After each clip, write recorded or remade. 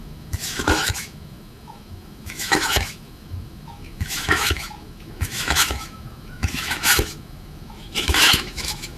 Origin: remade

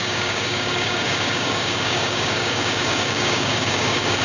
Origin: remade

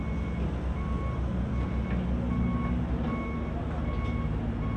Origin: recorded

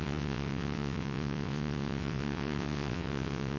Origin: remade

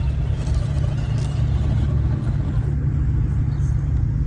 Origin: recorded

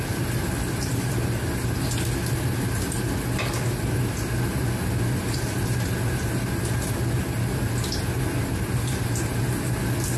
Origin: recorded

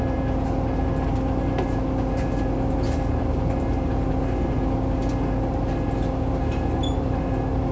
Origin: recorded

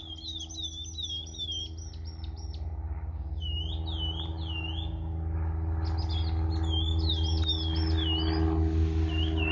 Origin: recorded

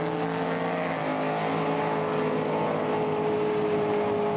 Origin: recorded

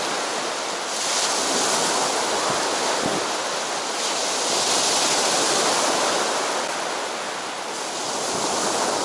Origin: recorded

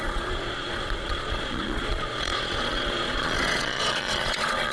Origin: remade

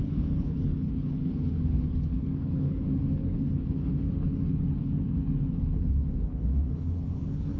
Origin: remade